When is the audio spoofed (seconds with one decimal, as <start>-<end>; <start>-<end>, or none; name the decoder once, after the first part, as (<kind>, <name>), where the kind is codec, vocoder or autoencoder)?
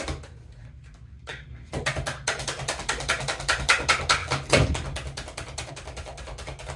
none